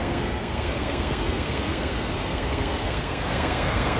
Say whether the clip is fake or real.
fake